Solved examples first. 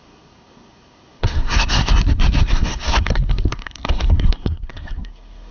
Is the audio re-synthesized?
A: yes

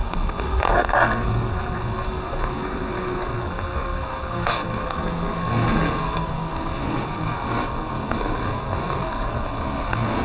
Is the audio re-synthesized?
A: yes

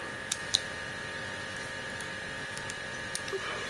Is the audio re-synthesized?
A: no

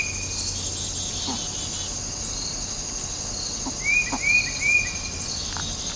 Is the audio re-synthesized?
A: no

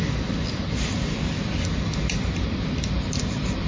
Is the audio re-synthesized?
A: no